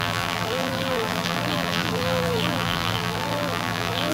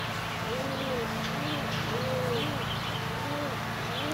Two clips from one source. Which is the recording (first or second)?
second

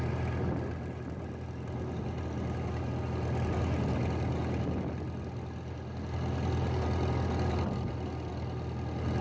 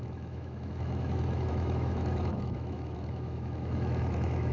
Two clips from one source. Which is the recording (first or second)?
first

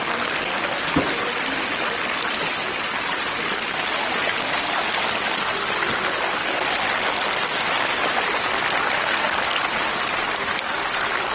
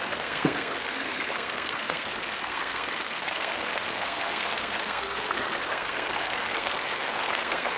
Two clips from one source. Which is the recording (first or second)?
first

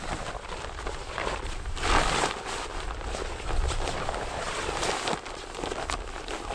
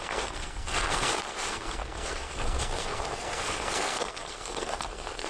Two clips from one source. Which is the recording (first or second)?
first